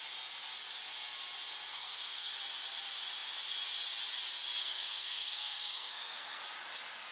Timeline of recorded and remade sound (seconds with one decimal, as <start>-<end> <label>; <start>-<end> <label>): 0.0-1.7 recorded; 1.7-2.3 remade; 2.3-4.6 recorded; 4.6-6.4 remade; 6.4-7.1 recorded